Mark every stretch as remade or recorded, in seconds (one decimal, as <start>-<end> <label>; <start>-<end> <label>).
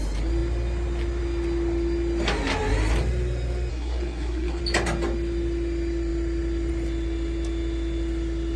0.0-3.7 recorded; 3.7-4.6 remade; 4.6-8.6 recorded